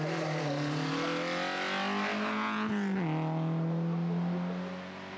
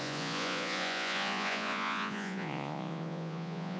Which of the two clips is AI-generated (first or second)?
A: second